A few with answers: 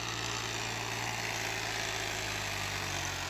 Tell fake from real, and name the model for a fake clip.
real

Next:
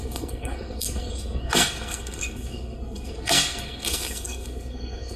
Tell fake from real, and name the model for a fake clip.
fake, codec, SNAC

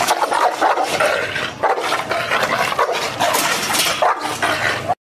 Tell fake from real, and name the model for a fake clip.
real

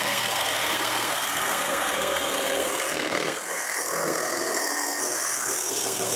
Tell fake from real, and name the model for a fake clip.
fake, codec, SNAC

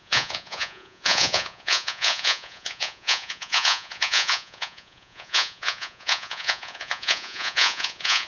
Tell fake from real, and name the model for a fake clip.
fake, vocoder, Vocos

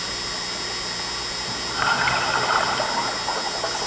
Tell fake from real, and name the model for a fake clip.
real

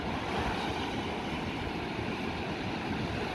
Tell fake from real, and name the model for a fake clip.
real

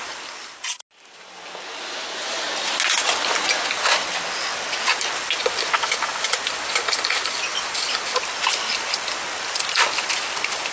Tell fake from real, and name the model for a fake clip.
real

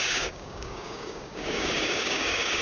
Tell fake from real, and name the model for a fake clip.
fake, codec, DAC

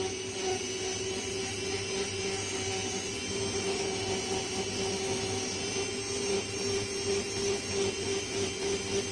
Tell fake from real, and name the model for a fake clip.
real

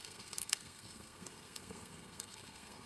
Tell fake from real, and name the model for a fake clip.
fake, codec, SNAC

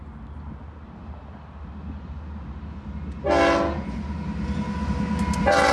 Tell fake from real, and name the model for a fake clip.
real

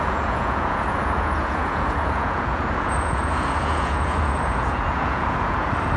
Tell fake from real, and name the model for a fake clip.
fake, vocoder, Vocos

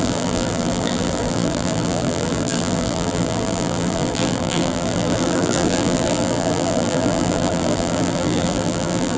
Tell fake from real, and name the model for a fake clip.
fake, vocoder, BigVGAN v2